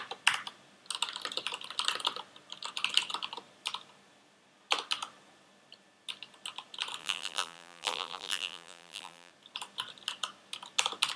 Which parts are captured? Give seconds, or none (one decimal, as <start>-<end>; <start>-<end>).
0.0-7.0; 9.3-11.2